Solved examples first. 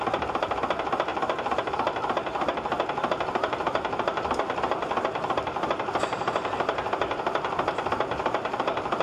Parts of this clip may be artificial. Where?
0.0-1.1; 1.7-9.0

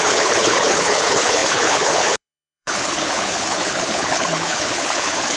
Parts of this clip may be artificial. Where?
0.0-5.4

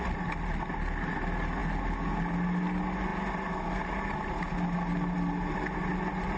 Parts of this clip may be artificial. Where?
none

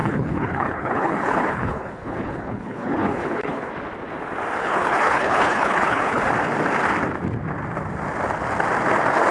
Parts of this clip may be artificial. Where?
0.0-3.7; 4.6-6.2

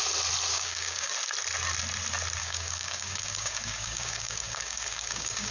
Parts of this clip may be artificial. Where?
0.5-1.1; 2.4-5.5

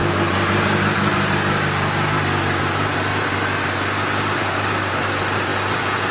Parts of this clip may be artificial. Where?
2.6-3.1; 4.2-5.5